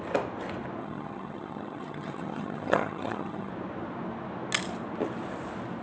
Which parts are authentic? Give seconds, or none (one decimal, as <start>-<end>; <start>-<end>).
0.0-0.8; 3.5-5.8